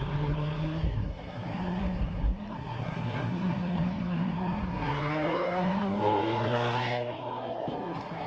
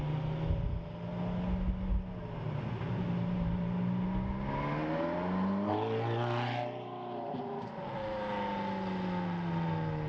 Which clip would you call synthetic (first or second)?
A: first